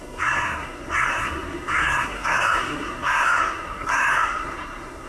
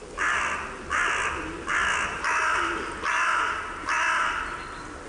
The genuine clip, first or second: second